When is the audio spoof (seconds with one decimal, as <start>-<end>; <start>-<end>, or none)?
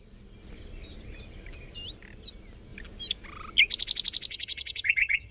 4.3-5.3